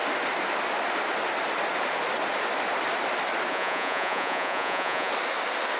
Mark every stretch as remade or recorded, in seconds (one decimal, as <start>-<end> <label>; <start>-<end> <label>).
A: 0.0-3.5 recorded; 3.5-5.1 remade; 5.1-5.8 recorded